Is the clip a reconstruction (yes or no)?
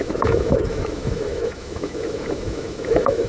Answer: yes